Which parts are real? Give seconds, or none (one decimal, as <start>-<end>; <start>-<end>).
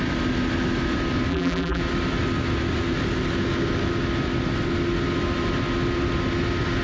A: 0.0-1.3; 1.8-6.8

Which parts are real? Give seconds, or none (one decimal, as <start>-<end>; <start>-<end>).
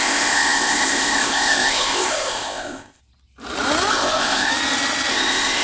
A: 3.0-3.9; 4.5-5.1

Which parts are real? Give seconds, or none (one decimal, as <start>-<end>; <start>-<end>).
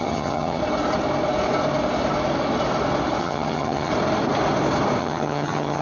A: 0.6-3.2; 3.9-5.0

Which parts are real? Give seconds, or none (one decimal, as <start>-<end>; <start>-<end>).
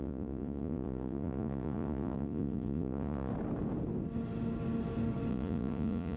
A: 3.3-5.3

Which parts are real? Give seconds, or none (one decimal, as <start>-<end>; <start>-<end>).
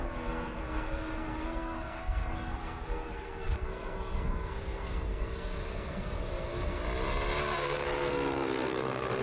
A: 6.8-7.4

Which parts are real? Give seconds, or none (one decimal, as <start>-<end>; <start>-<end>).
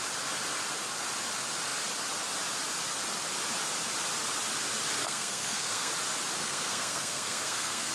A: 0.0-5.0; 5.9-6.4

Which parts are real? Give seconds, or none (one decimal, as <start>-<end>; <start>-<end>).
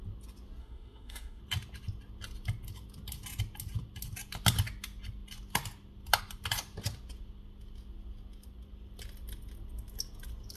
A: 0.0-0.6; 1.4-10.6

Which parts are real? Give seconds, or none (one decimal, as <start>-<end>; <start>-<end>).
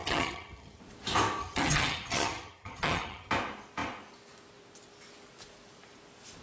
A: 0.8-1.4; 3.3-6.4